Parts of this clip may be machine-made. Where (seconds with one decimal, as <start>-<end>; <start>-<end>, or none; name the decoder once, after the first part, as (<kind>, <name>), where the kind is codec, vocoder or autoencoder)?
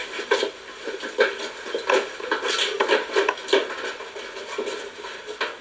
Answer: none